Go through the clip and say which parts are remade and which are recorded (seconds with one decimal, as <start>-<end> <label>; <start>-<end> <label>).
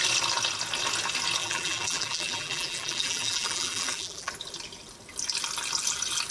0.0-1.4 recorded; 1.4-4.3 remade; 4.3-6.3 recorded